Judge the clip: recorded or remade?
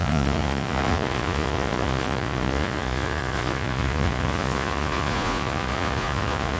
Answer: remade